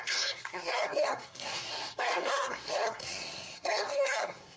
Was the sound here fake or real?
fake